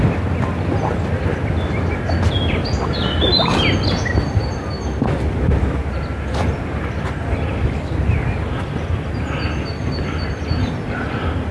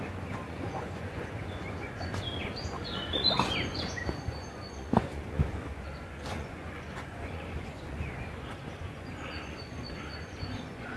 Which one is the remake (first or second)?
second